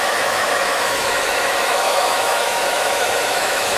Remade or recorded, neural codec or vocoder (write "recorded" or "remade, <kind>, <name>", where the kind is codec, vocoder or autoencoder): remade, autoencoder, DAC-VAE